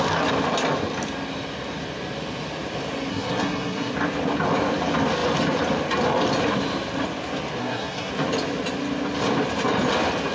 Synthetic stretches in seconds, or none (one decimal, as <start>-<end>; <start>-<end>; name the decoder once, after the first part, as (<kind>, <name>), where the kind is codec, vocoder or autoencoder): 3.1-3.9 (codec, SNAC); 7.6-8.1